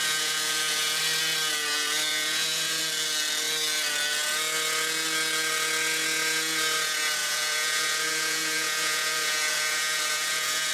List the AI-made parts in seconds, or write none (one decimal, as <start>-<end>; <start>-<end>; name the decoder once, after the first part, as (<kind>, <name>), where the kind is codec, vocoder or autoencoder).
0.0-1.0 (vocoder, Vocos); 2.1-2.8; 7.2-10.7